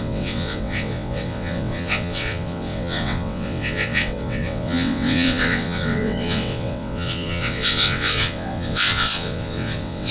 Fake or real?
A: fake